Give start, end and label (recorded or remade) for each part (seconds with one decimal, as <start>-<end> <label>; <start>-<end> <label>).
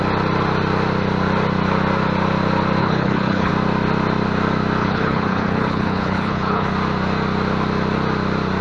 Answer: 0.0-2.8 recorded; 2.8-3.5 remade; 3.5-4.8 recorded; 4.8-6.7 remade; 6.7-8.6 recorded